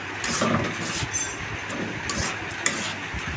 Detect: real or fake real